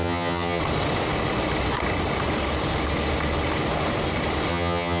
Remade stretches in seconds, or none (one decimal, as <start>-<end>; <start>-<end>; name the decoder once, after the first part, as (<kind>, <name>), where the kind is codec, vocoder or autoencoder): 0.0-0.6 (vocoder, HiFi-GAN); 4.5-5.0